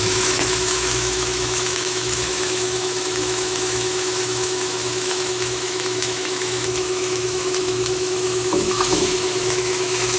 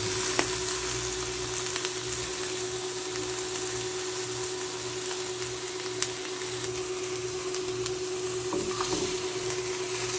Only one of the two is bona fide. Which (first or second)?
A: second